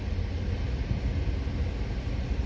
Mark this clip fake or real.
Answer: real